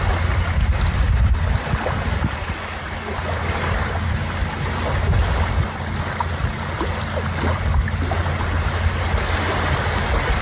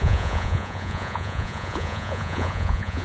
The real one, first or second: first